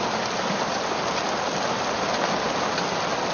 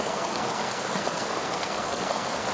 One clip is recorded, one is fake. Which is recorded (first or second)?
first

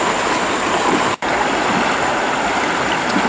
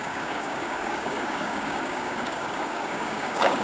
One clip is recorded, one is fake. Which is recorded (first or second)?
first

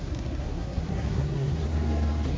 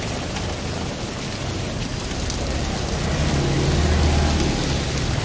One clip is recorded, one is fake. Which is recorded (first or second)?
second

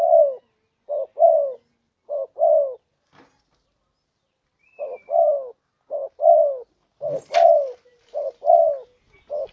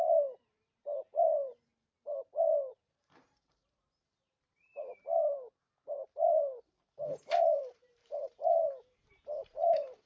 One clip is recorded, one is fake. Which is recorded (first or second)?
first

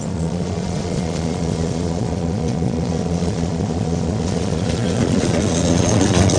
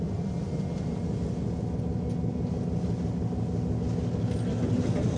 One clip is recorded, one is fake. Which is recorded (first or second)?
second